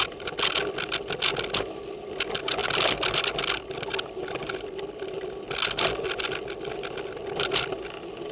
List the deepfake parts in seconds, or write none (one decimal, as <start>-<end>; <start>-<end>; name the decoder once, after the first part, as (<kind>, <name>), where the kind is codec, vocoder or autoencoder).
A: none